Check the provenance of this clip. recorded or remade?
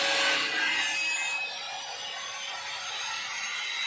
recorded